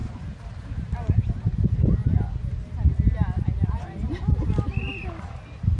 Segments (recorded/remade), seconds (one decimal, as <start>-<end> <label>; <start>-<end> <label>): 0.0-5.8 recorded